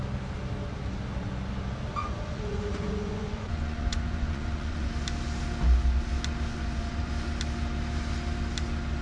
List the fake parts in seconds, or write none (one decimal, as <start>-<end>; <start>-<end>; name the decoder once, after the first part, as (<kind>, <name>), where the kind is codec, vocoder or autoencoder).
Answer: 2.0-4.9 (vocoder, Vocos); 6.5-7.1